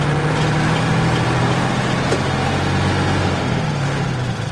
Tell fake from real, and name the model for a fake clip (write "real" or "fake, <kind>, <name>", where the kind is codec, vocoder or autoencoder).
real